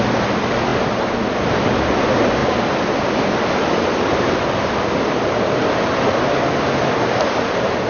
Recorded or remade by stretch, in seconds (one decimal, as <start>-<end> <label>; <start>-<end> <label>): 0.0-2.4 recorded; 2.4-6.2 remade; 6.2-7.9 recorded